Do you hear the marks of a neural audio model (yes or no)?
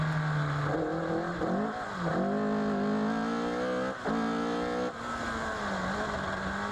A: no